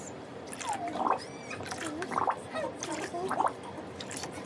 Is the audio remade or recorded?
recorded